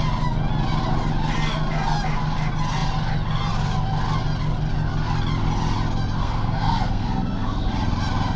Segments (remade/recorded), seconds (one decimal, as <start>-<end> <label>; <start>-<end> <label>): 0.0-6.2 recorded; 6.2-7.7 remade; 7.7-8.4 recorded